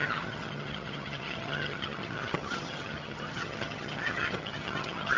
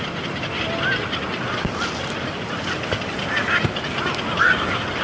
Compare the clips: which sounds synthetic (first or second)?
first